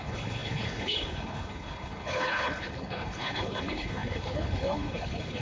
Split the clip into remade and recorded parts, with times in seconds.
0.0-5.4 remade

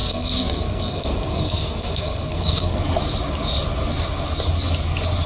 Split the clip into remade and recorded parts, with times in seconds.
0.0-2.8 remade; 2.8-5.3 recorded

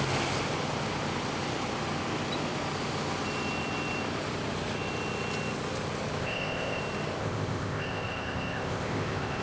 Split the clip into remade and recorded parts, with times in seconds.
0.0-6.2 recorded; 6.2-6.8 remade; 6.8-7.2 recorded; 7.2-9.4 remade

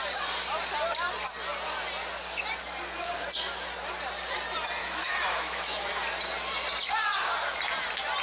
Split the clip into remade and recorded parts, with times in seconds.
0.0-4.8 recorded; 4.8-5.9 remade; 5.9-8.2 recorded

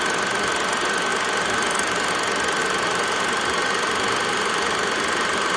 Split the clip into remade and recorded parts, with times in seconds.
0.0-1.1 recorded; 1.1-2.1 remade; 2.1-2.6 recorded; 2.6-5.6 remade

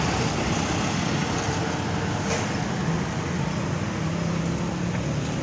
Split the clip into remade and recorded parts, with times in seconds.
0.0-5.4 recorded

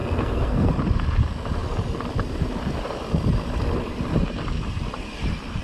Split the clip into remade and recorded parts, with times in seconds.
0.0-0.7 remade; 0.7-5.6 recorded

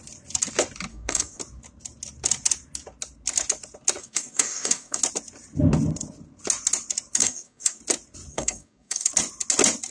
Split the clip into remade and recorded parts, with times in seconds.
0.0-0.9 recorded; 0.9-1.4 remade; 1.4-4.0 recorded; 4.0-5.0 remade; 5.0-7.2 recorded; 7.2-7.8 remade; 7.8-8.3 recorded; 8.3-9.1 remade; 9.1-9.9 recorded